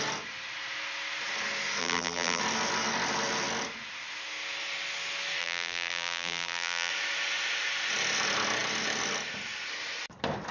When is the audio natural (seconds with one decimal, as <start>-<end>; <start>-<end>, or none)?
0.0-1.8; 2.4-5.4; 6.9-10.5